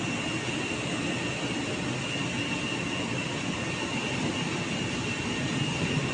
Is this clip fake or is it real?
real